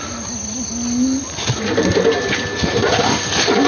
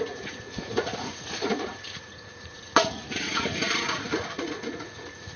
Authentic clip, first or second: first